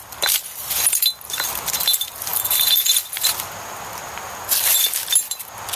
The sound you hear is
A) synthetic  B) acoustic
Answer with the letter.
A